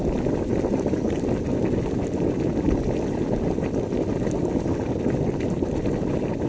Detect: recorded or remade recorded